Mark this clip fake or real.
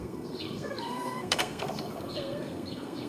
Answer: fake